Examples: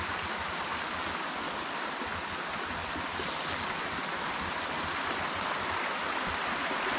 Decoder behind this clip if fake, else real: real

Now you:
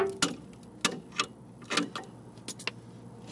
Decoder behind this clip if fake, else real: real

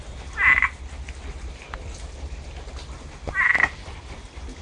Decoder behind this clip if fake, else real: real